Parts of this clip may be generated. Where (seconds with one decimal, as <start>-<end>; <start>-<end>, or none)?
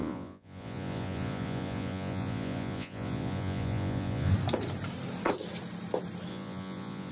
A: 0.0-4.3; 6.3-7.1